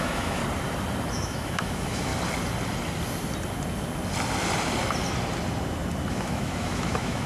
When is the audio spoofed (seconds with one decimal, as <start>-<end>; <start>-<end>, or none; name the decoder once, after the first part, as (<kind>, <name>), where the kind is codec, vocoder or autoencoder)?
0.0-0.4 (autoencoder, DAC-VAE); 1.1-2.1; 6.1-7.3